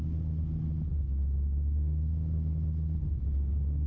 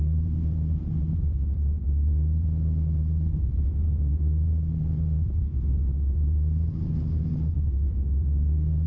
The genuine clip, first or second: first